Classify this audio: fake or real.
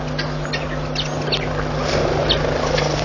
real